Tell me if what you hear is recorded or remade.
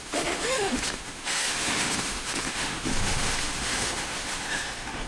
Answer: remade